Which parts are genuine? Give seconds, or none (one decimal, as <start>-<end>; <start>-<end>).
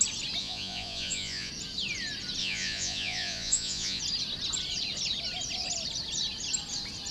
0.0-0.4; 1.5-2.4; 4.0-7.1